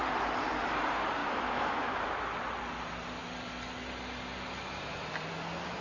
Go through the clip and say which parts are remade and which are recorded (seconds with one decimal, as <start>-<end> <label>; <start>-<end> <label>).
0.0-1.2 recorded; 1.2-2.0 remade; 2.0-5.8 recorded